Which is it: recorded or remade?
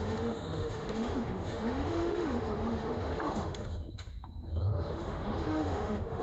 remade